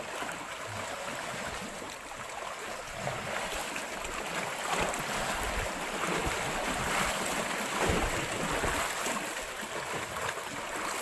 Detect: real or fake real